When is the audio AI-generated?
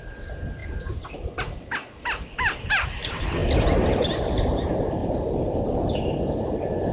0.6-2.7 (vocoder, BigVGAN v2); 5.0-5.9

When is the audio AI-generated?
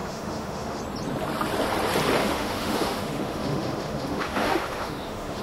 0.0-0.8 (autoencoder, DAC-VAE); 2.2-5.4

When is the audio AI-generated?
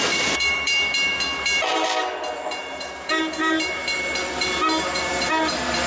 0.0-5.9 (vocoder, BigVGAN v2)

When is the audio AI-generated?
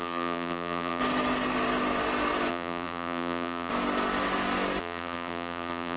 0.0-1.0 (vocoder, BigVGAN v2); 2.5-3.7; 4.8-6.0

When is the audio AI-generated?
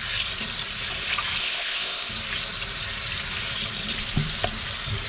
1.4-2.1 (codec, ZipCodec)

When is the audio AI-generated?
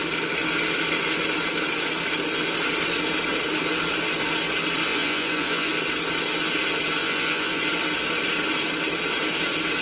4.9-5.7 (vocoder, Vocos); 7.0-7.6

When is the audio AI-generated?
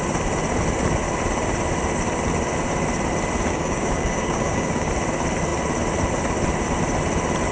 3.5-4.9 (codec, DAC)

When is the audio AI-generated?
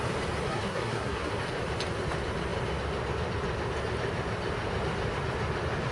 0.5-1.3 (codec, SNAC)